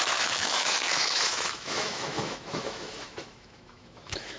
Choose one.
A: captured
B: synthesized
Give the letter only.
B